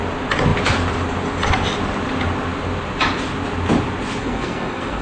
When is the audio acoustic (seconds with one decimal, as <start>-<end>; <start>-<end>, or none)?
0.0-4.2